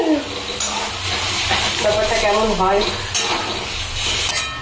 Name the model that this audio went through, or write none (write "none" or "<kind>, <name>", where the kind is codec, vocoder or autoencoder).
none